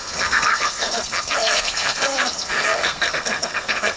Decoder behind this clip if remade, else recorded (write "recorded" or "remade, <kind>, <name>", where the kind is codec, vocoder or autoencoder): remade, codec, SNAC